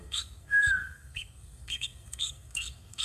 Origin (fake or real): fake